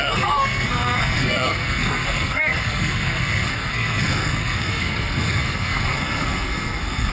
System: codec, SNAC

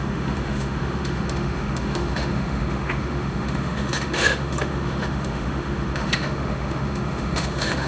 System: autoencoder, DAC-VAE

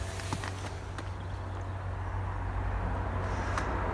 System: none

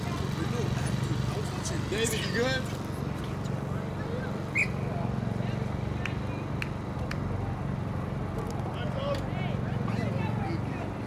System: none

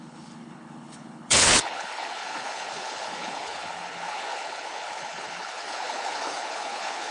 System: codec, HILCodec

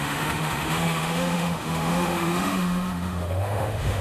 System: autoencoder, DAC-VAE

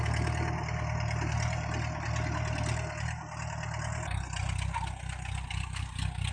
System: none